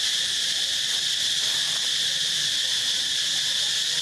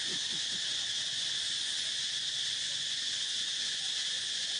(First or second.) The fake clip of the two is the second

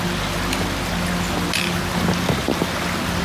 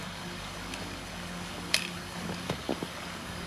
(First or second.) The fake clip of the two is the second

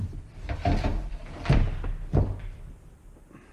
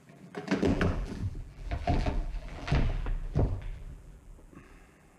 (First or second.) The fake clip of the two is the second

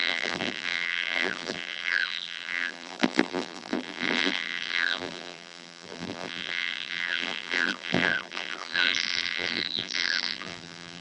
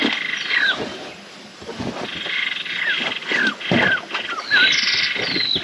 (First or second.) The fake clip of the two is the first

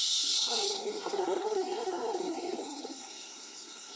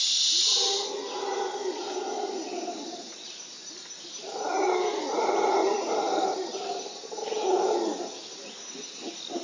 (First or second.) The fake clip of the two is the first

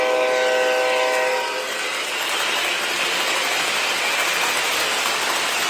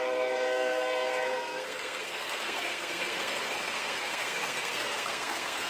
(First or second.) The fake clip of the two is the second